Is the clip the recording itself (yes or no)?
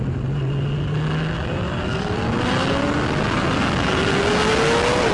yes